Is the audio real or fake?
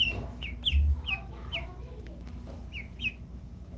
fake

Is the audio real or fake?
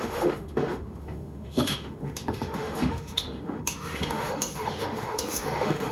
fake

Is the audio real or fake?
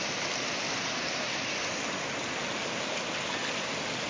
real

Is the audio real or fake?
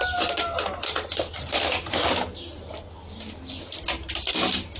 real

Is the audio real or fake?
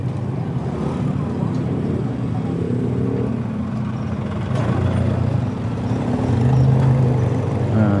real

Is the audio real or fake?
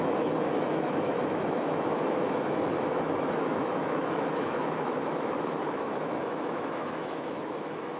fake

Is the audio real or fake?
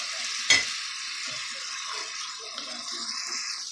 real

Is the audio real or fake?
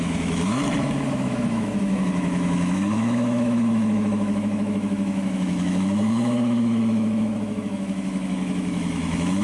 fake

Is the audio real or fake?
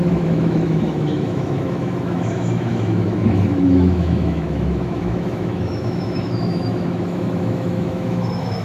fake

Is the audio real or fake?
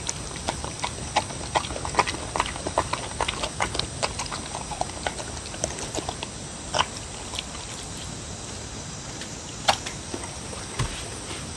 real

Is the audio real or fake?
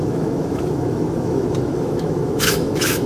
fake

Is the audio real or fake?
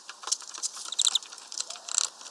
real